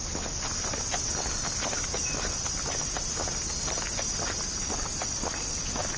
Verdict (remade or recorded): recorded